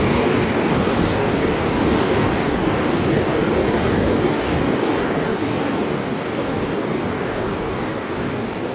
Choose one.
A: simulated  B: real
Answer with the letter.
A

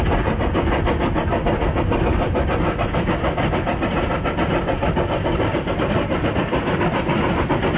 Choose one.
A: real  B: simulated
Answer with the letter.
A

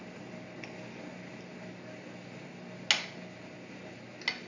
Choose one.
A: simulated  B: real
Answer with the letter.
B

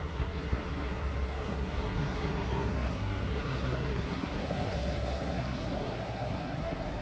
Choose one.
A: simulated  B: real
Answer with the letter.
A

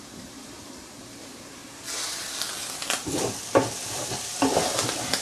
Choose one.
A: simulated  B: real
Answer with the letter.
B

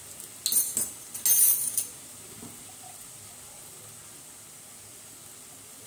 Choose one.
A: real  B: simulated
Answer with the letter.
A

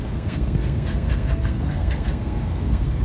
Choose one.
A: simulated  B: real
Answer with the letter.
A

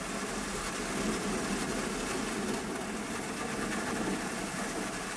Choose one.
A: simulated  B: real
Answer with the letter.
B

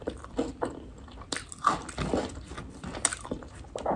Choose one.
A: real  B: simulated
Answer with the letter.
A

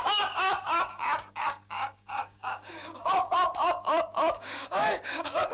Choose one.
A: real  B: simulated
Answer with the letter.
B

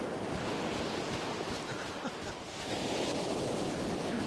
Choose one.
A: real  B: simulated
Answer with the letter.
A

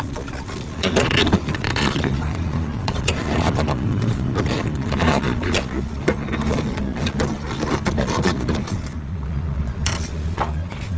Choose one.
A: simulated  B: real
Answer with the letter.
A